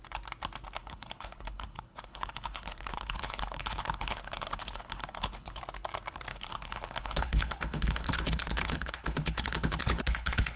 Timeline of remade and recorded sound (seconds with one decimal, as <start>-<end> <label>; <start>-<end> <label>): 0.0-0.8 recorded; 0.8-5.6 remade; 5.6-6.3 recorded; 6.3-10.6 remade